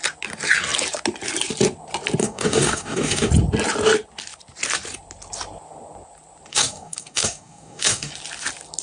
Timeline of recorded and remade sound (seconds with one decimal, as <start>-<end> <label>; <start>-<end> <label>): 0.0-2.2 recorded; 2.2-3.3 remade; 3.3-6.5 recorded; 6.5-8.1 remade; 8.1-8.8 recorded